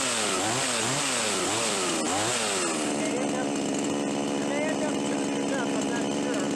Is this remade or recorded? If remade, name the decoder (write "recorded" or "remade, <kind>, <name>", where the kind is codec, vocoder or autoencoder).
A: recorded